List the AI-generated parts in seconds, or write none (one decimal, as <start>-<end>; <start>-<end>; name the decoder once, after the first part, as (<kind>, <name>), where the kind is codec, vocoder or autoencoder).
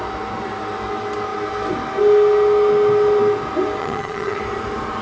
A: 3.8-4.4 (vocoder, HiFi-GAN)